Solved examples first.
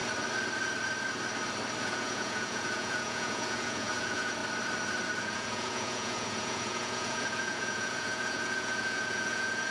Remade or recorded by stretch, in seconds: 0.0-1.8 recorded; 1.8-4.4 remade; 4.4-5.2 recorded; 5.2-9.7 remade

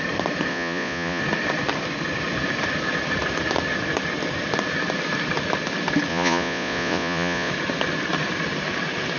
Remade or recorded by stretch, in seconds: 0.0-0.5 recorded; 0.5-1.2 remade; 1.2-6.1 recorded; 6.1-7.5 remade; 7.5-9.2 recorded

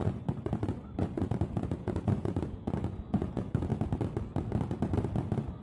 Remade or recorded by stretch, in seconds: 0.0-3.7 remade; 3.7-5.6 recorded

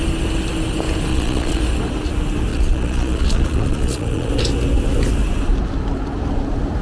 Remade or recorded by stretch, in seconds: 0.0-1.1 recorded; 1.1-1.6 remade; 1.6-2.5 recorded; 2.5-4.3 remade; 4.3-6.8 recorded

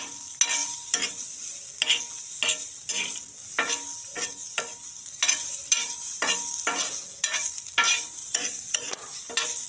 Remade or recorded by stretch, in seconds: 0.0-8.2 recorded; 8.2-9.2 remade; 9.2-9.7 recorded

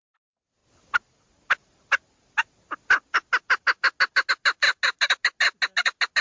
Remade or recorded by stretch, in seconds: 0.0-6.2 recorded